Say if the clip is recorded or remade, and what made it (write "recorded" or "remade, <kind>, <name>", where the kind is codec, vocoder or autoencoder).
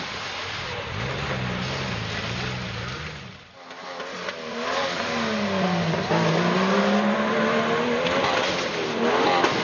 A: recorded